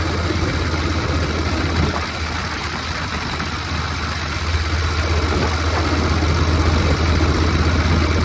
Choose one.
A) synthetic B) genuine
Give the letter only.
B